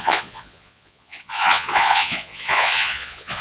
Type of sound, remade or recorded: remade